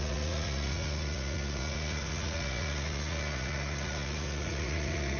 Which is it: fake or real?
fake